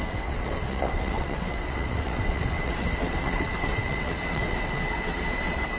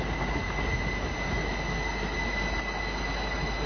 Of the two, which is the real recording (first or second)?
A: second